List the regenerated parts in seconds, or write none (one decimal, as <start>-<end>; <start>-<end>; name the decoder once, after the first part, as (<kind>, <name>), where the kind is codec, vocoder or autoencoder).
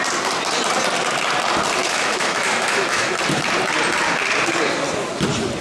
1.8-3.2 (autoencoder, DAC-VAE)